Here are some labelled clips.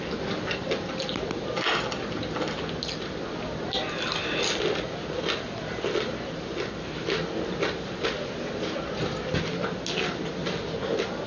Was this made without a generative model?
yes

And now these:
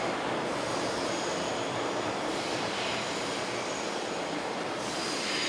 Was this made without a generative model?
yes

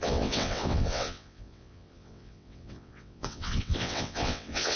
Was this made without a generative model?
no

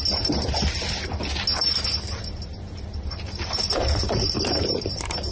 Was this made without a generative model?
yes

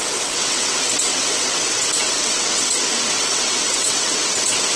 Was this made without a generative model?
no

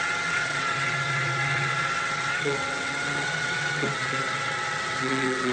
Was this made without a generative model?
no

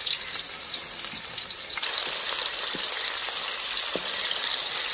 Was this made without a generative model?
yes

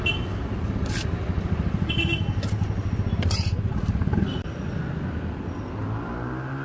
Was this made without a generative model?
yes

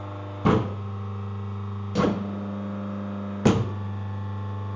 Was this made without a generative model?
yes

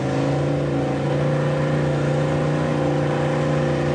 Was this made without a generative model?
yes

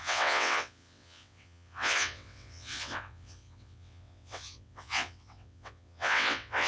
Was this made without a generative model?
no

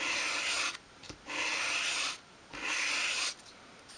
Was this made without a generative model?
yes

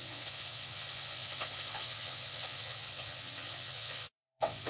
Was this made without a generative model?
no